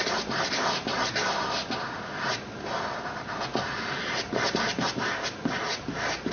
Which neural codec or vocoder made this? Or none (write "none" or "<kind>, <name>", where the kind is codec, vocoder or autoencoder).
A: none